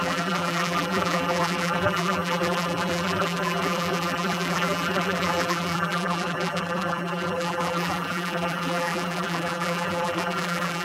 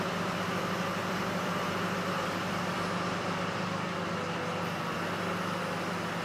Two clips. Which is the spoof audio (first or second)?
first